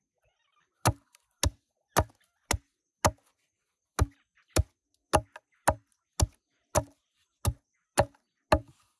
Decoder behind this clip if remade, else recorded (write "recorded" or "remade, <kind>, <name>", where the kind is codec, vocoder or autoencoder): recorded